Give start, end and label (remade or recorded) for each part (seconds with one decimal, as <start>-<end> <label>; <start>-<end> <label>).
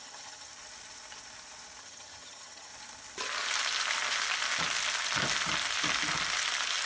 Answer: 0.0-0.5 remade; 0.5-1.8 recorded; 1.8-2.7 remade; 2.7-6.9 recorded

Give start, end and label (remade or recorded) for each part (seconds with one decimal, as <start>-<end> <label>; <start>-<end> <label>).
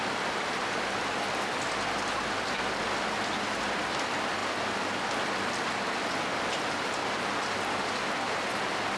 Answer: 0.0-9.0 recorded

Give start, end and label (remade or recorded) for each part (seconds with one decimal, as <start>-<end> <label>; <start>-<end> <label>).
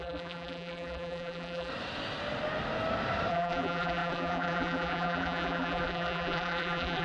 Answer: 0.0-1.7 remade; 1.7-3.3 recorded; 3.3-7.0 remade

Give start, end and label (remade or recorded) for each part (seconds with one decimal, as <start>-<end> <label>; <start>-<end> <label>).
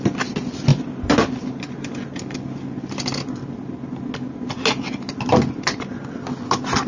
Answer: 0.0-6.9 recorded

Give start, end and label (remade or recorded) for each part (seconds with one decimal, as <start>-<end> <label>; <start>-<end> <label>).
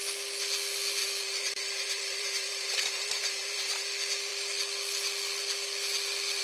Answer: 0.0-1.0 recorded; 1.0-3.8 remade; 3.8-6.4 recorded